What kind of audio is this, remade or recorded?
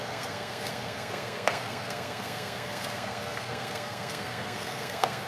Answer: remade